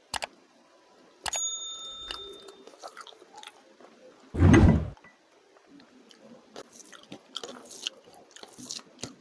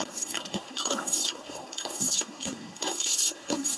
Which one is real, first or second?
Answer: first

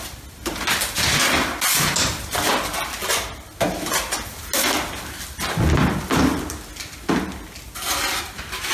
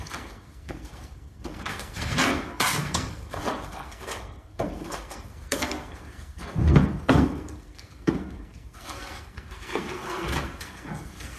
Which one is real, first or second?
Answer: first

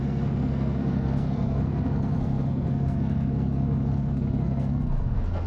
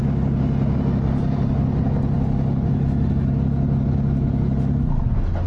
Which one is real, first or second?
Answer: second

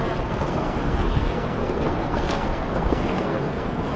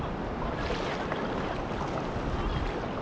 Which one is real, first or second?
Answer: second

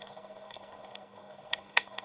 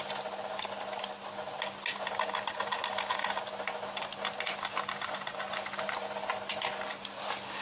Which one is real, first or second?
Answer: second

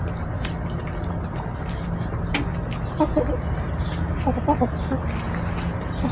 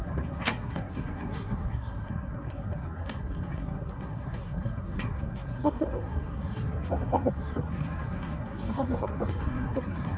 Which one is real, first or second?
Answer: first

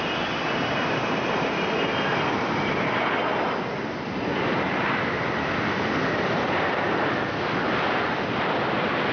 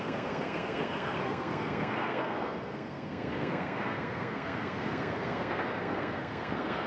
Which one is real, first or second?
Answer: first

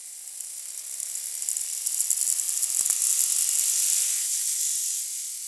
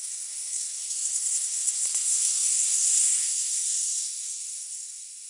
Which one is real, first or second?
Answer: first